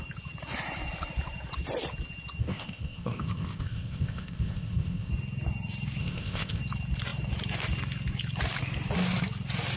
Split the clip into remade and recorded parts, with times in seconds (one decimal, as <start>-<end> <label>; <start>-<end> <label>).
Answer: 0.0-2.4 recorded; 2.4-5.1 remade; 5.1-6.0 recorded; 6.0-6.6 remade; 6.6-9.8 recorded